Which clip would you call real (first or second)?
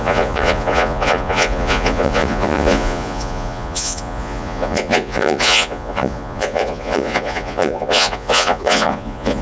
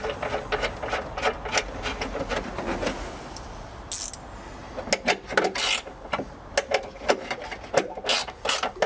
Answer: second